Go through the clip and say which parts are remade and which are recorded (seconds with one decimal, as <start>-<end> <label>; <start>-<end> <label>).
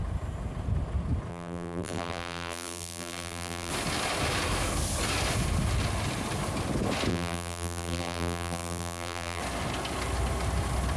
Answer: 0.0-1.3 recorded; 1.3-3.7 remade; 3.7-7.1 recorded; 7.1-9.4 remade; 9.4-11.0 recorded